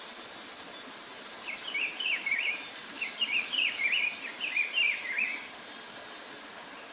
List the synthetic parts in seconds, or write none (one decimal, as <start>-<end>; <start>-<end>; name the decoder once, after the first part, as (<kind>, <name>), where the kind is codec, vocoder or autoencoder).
1.1-5.2 (vocoder, BigVGAN v2)